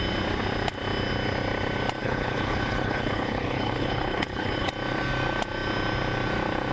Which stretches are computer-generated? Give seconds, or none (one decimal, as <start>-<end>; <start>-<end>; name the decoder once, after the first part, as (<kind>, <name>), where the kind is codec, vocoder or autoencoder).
2.0-4.7 (codec, HILCodec)